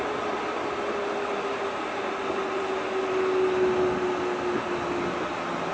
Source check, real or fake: real